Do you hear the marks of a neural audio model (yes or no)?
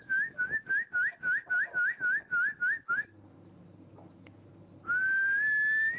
no